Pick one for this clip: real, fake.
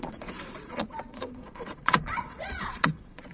fake